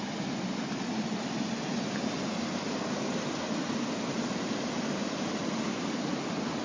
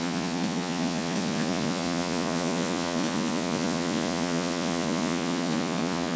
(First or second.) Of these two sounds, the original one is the first